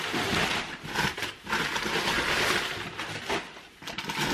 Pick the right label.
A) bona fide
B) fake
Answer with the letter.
A